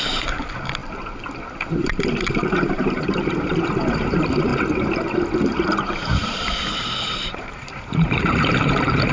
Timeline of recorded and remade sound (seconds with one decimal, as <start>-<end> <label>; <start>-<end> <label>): 0.0-0.8 remade; 0.8-1.5 recorded; 1.5-4.5 remade; 4.5-7.0 recorded; 7.0-9.1 remade